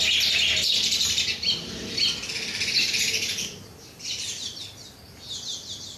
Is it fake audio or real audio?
real